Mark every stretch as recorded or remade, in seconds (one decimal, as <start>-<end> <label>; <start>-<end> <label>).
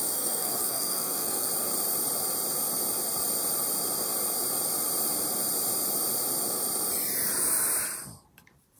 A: 0.0-1.5 remade; 1.5-8.8 recorded